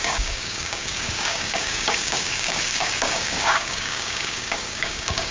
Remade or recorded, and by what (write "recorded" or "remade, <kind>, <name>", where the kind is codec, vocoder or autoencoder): remade, codec, DAC